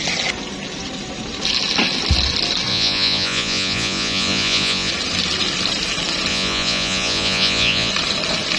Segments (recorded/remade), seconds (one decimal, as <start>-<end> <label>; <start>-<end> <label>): 0.0-2.7 recorded; 2.7-4.9 remade; 4.9-6.3 recorded; 6.3-7.9 remade; 7.9-8.6 recorded